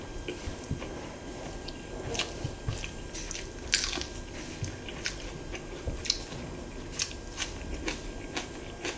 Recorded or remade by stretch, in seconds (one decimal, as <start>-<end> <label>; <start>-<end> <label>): 0.0-9.0 recorded